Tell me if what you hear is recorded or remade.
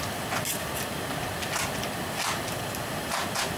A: recorded